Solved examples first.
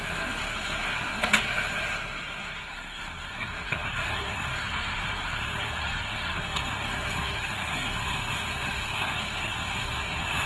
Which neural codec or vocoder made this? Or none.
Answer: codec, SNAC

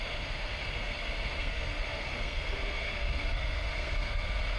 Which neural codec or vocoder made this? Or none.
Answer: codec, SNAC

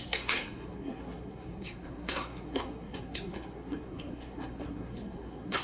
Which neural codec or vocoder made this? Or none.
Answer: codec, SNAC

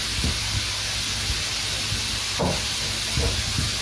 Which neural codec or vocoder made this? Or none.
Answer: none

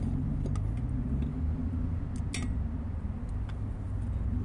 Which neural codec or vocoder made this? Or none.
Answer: none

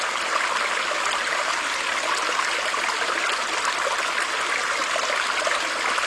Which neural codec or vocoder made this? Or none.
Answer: none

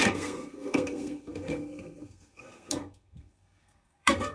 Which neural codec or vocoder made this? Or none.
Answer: codec, SNAC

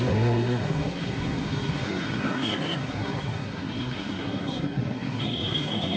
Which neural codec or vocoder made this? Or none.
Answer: codec, SNAC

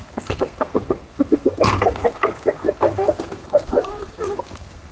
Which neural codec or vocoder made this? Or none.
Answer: codec, SNAC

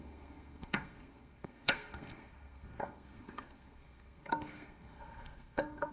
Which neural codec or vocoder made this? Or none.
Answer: codec, SNAC